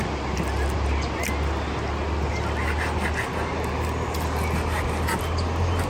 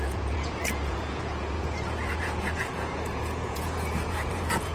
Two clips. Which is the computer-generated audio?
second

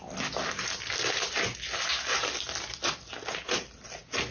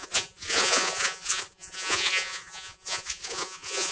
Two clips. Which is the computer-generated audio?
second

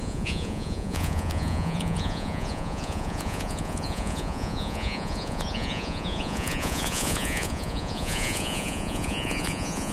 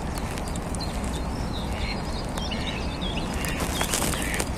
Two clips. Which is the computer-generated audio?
first